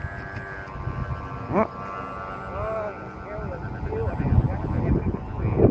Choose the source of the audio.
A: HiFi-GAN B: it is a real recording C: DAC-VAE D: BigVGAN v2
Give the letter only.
B